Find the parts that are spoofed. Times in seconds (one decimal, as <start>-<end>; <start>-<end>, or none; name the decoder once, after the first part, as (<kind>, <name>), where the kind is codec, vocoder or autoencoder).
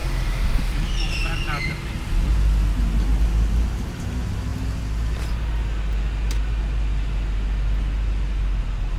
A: 0.0-2.3 (vocoder, BigVGAN v2)